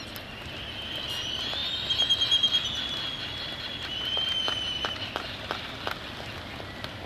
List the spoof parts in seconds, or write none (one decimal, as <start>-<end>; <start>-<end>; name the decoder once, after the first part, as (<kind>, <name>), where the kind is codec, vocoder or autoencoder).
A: none